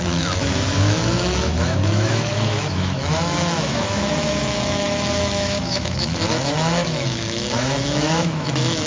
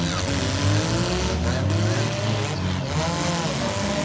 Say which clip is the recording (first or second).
second